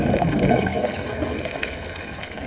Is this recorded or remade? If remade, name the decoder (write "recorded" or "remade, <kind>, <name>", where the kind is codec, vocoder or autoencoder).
remade, codec, SNAC